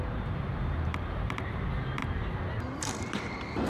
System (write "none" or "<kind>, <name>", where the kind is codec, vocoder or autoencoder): vocoder, BigVGAN v2